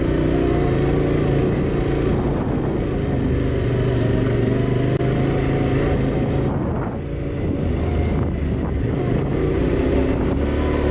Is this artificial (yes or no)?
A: no